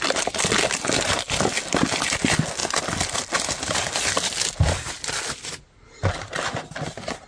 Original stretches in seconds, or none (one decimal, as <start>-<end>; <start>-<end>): 0.0-7.3